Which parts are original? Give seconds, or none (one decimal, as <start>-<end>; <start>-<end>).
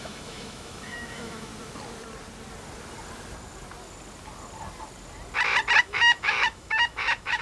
1.5-5.8